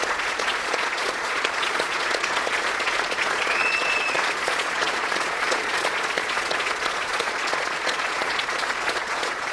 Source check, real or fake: fake